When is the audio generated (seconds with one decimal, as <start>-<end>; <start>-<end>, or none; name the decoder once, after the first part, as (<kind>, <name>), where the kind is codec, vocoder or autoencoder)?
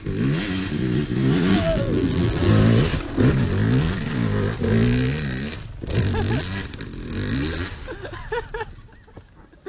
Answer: 1.5-2.5 (vocoder, BigVGAN v2)